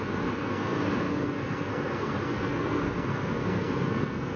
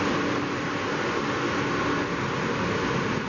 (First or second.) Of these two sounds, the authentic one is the second